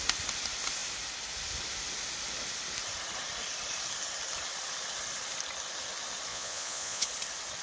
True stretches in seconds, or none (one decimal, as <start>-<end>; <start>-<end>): 0.0-6.3; 7.1-7.6